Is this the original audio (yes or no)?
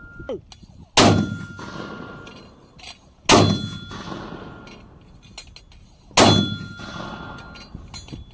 yes